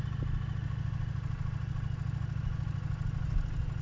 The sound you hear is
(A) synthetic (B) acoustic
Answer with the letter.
B